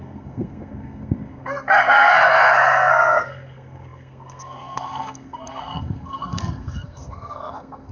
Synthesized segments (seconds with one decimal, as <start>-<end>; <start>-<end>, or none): 0.0-7.9